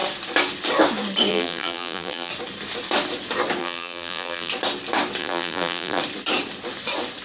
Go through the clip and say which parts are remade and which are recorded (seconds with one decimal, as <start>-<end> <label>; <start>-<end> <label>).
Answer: 0.0-1.3 recorded; 1.3-2.3 remade; 2.3-3.6 recorded; 3.6-4.5 remade; 4.5-5.2 recorded; 5.2-6.0 remade; 6.0-7.2 recorded

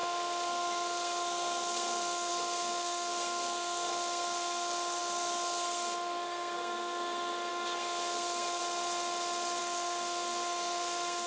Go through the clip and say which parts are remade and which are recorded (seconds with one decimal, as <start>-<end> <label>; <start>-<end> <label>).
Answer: 0.0-8.6 remade; 8.6-9.6 recorded; 9.6-11.3 remade

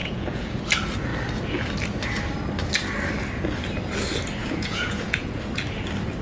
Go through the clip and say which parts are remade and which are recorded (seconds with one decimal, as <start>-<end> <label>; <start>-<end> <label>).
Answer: 0.0-0.6 remade; 0.6-4.4 recorded; 4.4-5.4 remade; 5.4-6.2 recorded

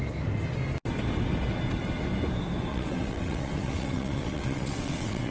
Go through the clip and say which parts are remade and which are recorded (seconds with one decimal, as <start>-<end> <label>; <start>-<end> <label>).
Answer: 0.0-2.7 recorded; 2.7-5.3 remade

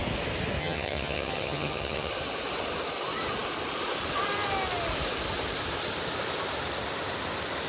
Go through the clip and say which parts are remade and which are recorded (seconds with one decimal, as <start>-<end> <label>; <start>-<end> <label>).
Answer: 0.0-0.6 recorded; 0.6-2.1 remade; 2.1-7.7 recorded

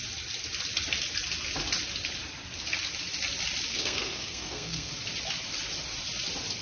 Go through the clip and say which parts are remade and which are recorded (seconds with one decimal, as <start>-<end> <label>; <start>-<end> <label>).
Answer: 0.0-3.7 recorded; 3.7-4.9 remade; 4.9-6.6 recorded

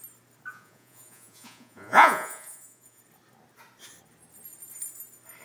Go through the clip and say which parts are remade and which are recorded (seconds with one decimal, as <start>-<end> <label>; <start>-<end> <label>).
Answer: 0.0-0.5 recorded; 0.5-3.0 remade; 3.0-5.4 recorded